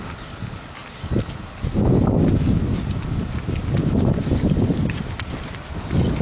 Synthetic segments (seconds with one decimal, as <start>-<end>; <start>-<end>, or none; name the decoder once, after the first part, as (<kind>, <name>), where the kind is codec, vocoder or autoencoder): none